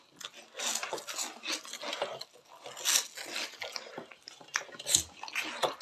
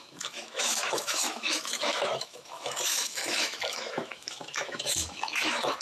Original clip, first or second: first